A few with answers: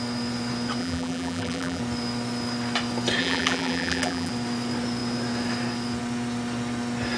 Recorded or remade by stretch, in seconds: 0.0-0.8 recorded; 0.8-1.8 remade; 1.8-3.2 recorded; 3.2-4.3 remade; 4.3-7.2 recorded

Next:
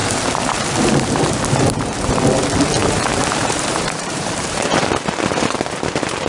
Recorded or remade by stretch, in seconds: 0.0-2.2 remade; 2.2-2.8 recorded; 2.8-4.8 remade; 4.8-6.3 recorded

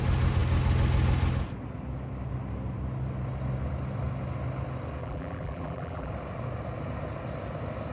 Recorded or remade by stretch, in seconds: 0.0-5.0 recorded; 5.0-6.1 remade; 6.1-7.9 recorded

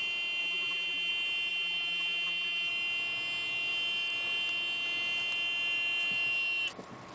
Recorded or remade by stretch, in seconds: 0.0-0.4 recorded; 0.4-1.1 remade; 1.1-1.5 recorded; 1.5-2.7 remade; 2.7-7.1 recorded

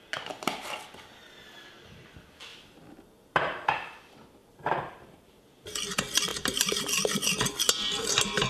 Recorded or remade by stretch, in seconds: 0.0-2.5 recorded; 2.5-3.7 remade; 3.7-4.4 recorded; 4.4-5.4 remade; 5.4-6.3 recorded; 6.3-6.8 remade; 6.8-8.5 recorded

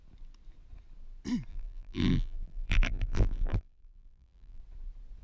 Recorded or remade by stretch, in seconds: 0.0-1.5 recorded; 1.5-4.6 remade; 4.6-5.2 recorded

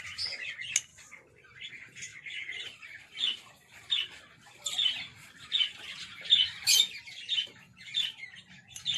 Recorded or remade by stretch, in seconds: 0.0-0.9 recorded; 0.9-1.7 remade; 1.7-2.1 recorded; 2.1-4.2 remade; 4.2-9.0 recorded

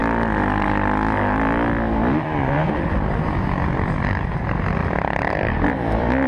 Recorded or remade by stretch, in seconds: 0.0-4.8 recorded; 4.8-6.3 remade